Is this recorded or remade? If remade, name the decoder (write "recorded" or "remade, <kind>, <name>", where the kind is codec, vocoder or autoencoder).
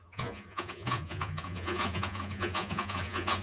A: remade, vocoder, Vocos